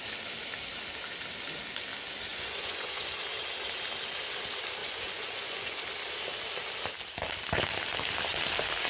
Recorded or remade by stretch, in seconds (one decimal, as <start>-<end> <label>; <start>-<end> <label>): 0.0-2.3 recorded; 2.3-3.1 remade; 3.1-4.8 recorded; 4.8-5.8 remade; 5.8-8.9 recorded